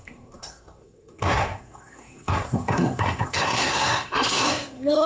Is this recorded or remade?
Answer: remade